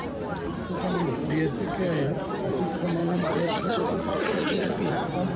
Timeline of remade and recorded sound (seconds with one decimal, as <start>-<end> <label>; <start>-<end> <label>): 0.0-3.0 recorded; 3.0-4.9 remade; 4.9-5.4 recorded